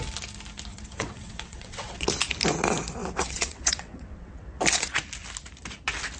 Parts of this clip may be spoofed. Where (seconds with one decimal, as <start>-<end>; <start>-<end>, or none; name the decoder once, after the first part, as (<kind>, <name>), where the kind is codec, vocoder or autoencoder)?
0.7-2.1 (vocoder, WaveNeXt); 3.0-4.6